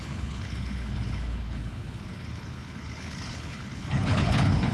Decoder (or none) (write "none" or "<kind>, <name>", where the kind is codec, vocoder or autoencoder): codec, HILCodec